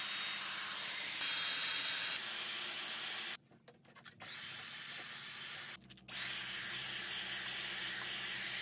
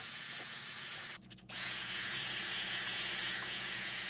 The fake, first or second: second